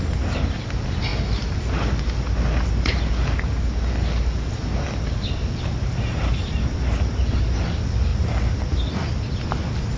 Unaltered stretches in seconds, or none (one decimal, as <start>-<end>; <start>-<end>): 0.0-6.1; 6.7-10.0